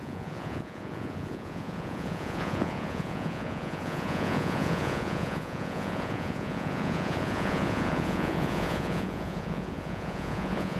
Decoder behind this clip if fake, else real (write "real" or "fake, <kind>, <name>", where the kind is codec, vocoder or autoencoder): fake, vocoder, Vocos